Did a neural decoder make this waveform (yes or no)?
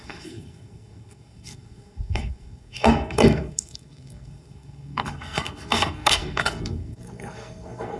yes